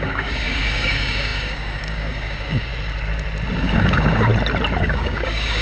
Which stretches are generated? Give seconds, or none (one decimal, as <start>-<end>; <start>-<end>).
0.0-2.7; 3.6-4.3; 4.8-5.6